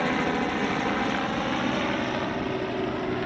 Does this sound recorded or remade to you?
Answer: recorded